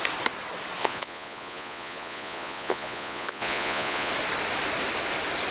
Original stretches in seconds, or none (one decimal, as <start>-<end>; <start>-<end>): 0.0-0.8; 4.1-5.5